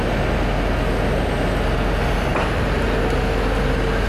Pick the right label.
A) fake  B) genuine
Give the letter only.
B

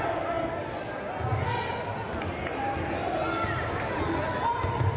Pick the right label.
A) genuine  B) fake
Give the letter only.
A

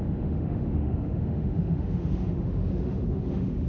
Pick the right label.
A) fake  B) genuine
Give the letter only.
A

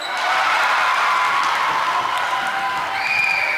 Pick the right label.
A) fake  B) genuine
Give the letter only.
B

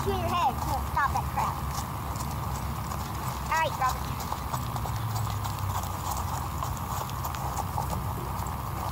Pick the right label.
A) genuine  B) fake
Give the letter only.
A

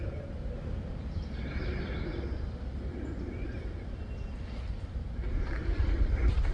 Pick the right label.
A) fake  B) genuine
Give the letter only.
B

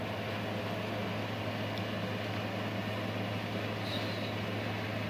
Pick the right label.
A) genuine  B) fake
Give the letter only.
A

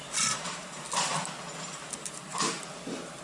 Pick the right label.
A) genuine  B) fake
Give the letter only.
A